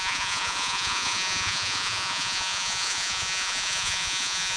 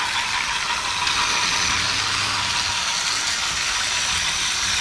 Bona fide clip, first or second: second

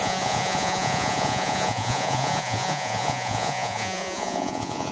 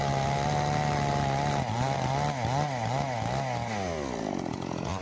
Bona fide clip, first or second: second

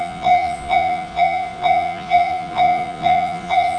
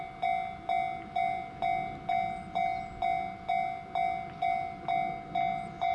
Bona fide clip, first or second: second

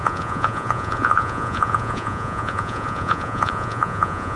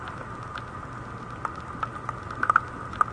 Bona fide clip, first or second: second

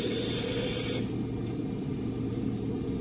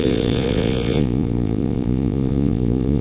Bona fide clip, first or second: first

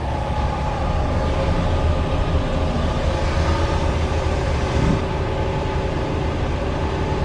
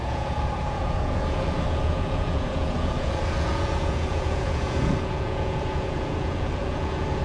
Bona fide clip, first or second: first